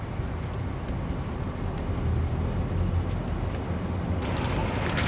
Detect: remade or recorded recorded